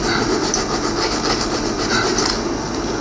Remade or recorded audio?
recorded